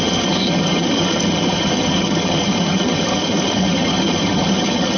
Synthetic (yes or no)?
yes